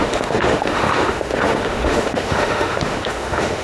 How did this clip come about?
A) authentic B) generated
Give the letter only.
B